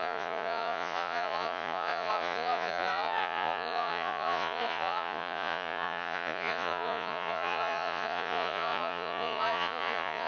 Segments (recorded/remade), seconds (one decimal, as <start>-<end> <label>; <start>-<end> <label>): 0.0-10.3 remade